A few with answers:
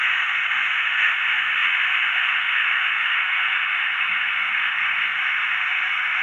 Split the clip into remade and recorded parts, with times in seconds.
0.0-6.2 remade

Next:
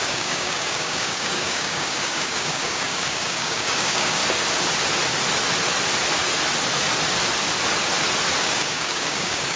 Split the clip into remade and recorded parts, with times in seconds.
0.0-4.2 remade; 4.2-8.4 recorded; 8.4-9.6 remade

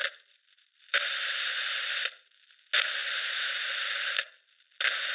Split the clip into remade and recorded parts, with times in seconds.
0.0-2.2 remade; 2.2-5.1 recorded

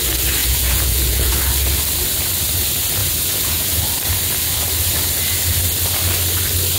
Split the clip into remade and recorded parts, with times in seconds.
0.0-0.4 recorded; 0.4-1.3 remade; 1.3-3.0 recorded; 3.0-3.8 remade; 3.8-6.8 recorded

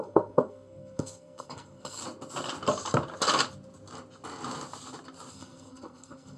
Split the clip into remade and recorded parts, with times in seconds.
0.0-2.0 remade; 2.0-5.3 recorded; 5.3-6.4 remade

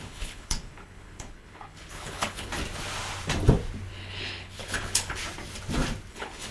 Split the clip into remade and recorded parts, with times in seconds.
0.0-2.5 remade; 2.5-3.9 recorded; 3.9-5.2 remade; 5.2-6.1 recorded; 6.1-6.5 remade

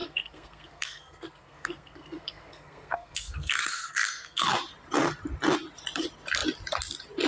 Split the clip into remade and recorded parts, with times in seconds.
0.0-4.4 remade; 4.4-7.3 recorded

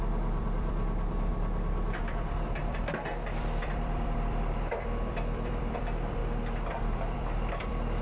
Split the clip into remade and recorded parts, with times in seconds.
0.0-1.3 remade; 1.3-2.0 recorded; 2.0-6.2 remade; 6.2-6.8 recorded; 6.8-8.0 remade